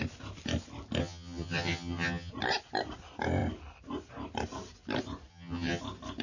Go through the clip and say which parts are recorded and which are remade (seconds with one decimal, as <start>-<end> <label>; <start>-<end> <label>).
0.0-1.0 recorded; 1.0-2.3 remade; 2.3-5.3 recorded; 5.3-5.8 remade; 5.8-6.2 recorded